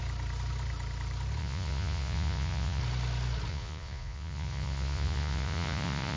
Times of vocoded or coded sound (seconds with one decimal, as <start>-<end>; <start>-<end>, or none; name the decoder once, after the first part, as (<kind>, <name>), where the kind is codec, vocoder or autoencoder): 1.4-2.8 (vocoder, Vocos); 3.5-6.2